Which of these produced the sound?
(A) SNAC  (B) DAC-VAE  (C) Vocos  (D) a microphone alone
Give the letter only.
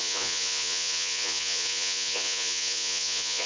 C